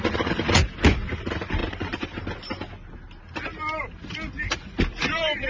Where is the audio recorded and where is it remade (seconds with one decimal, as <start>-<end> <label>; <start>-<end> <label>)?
0.0-1.6 recorded; 1.6-2.2 remade; 2.2-5.5 recorded